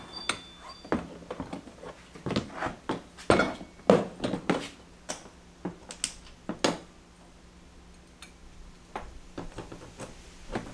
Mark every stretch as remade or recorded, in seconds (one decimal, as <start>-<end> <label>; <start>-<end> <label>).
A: 0.0-8.4 recorded; 8.4-9.3 remade; 9.3-10.7 recorded